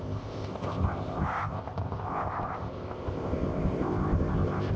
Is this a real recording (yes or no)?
no